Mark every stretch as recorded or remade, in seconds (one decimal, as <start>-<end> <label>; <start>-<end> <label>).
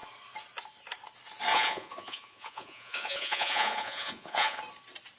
0.0-1.5 recorded; 1.5-4.6 remade; 4.6-5.2 recorded